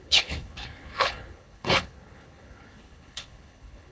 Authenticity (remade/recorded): remade